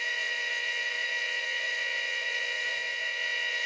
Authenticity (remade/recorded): remade